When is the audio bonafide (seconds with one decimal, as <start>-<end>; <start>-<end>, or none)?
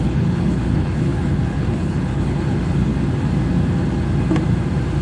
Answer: 2.9-5.0